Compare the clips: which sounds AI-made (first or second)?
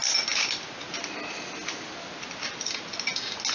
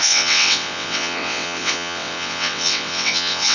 second